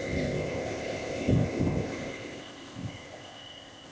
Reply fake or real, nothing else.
fake